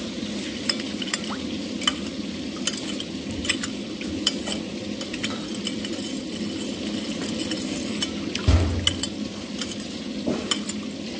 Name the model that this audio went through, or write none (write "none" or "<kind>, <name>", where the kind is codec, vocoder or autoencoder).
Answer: none